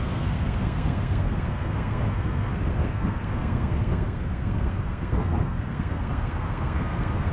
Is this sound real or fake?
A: fake